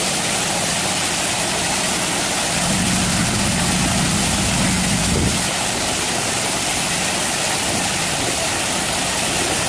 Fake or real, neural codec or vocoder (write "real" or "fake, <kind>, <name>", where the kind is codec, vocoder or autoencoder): real